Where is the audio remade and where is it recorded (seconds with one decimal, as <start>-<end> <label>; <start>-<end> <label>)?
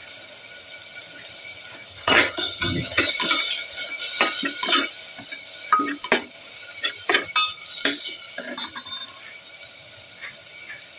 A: 0.0-1.9 recorded; 1.9-3.1 remade; 3.1-11.0 recorded